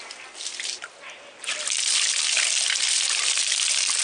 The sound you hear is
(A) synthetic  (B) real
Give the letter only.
B